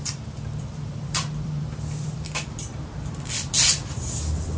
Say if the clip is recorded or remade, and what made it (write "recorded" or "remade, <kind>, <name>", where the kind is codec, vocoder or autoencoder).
remade, vocoder, BigVGAN v2